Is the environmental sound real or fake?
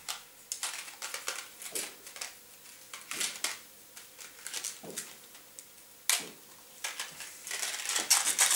real